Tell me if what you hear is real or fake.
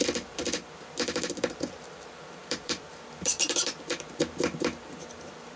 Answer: fake